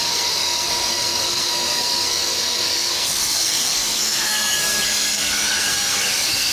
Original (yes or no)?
no